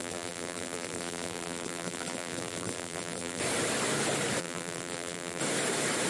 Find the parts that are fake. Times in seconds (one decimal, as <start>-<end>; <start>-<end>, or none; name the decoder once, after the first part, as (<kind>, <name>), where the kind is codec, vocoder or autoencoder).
0.0-3.4 (vocoder, BigVGAN v2); 4.4-5.4